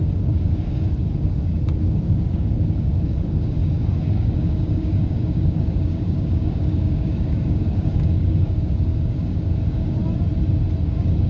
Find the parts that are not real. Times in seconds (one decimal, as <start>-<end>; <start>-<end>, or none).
0.0-10.0; 10.8-11.3